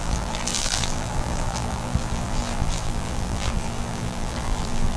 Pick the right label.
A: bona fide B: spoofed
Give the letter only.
B